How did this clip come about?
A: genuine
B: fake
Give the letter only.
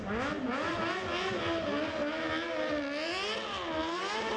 A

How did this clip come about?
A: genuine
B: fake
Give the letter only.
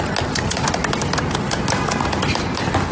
A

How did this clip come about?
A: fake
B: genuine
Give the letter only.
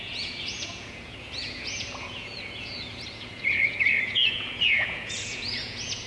A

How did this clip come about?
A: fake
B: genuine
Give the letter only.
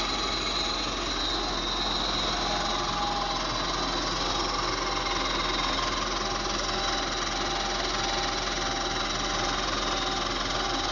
B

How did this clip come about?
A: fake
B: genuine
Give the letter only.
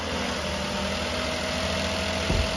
B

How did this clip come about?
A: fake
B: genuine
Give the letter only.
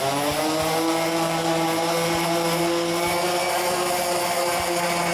B